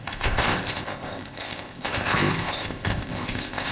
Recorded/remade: remade